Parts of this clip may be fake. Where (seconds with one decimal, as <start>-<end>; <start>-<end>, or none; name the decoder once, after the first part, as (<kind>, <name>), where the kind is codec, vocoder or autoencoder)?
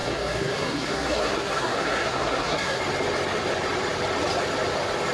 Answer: 0.0-2.8 (codec, SNAC)